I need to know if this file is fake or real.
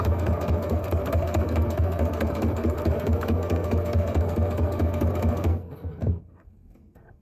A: fake